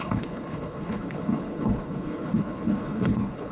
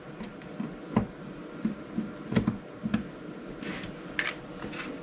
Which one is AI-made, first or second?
first